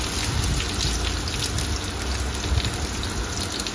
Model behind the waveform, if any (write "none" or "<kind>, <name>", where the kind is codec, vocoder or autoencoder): none